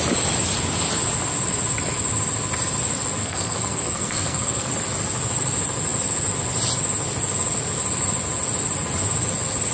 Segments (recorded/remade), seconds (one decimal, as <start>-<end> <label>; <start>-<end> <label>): 0.0-3.2 recorded; 3.2-4.7 remade; 4.7-9.7 recorded